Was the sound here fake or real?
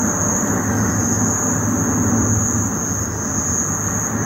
real